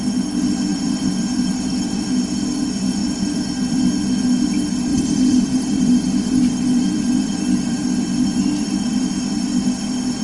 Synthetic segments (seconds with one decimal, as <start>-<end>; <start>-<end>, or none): 0.7-2.1; 3.0-3.8; 4.9-9.0